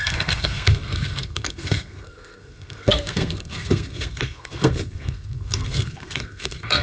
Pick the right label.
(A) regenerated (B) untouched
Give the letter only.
A